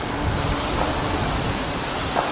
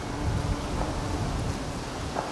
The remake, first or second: first